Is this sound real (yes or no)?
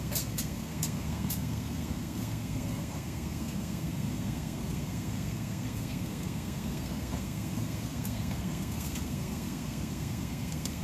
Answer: no